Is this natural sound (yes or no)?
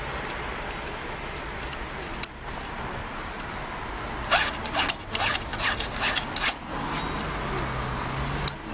yes